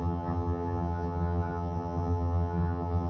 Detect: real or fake fake